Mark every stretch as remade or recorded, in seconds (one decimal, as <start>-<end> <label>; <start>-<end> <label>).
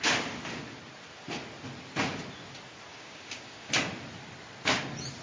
0.0-2.9 recorded; 2.9-3.7 remade; 3.7-5.2 recorded